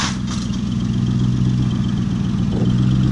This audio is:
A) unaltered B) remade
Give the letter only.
A